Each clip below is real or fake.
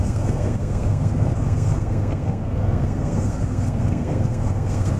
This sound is fake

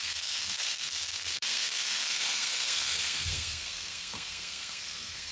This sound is fake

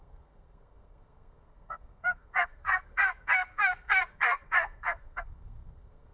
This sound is fake